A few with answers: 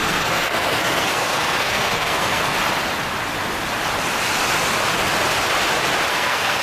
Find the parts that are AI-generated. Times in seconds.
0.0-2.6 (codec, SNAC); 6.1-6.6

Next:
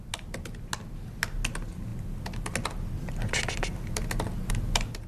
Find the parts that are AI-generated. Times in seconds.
none

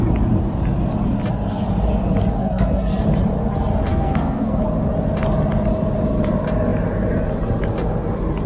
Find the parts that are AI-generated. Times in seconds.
2.4-3.0 (codec, SNAC); 3.9-4.6

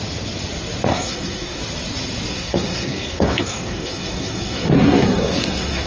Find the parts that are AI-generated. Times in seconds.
0.9-1.6 (codec, SNAC); 2.3-5.9

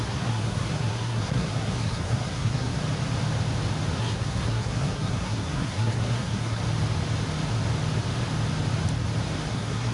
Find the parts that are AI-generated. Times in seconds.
0.0-2.8 (codec, SNAC); 4.0-6.6; 9.5-9.9

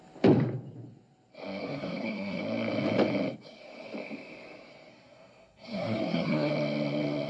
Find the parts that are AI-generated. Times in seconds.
1.6-2.4 (codec, SNAC); 4.9-6.5

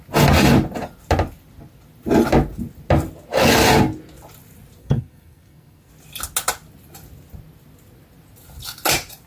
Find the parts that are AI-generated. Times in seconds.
4.8-5.9 (codec, SNAC)